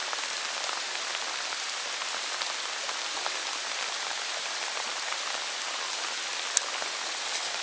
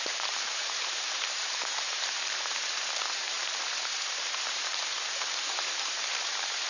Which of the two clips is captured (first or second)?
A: first